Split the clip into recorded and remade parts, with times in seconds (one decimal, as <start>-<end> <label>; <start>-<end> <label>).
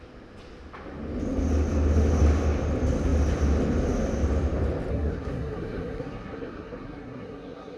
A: 0.0-4.9 recorded; 4.9-7.8 remade